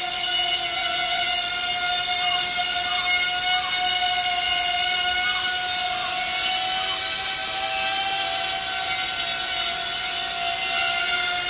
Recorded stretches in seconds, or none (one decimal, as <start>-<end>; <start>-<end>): 0.0-11.5